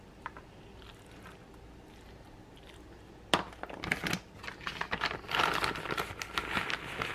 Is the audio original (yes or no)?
yes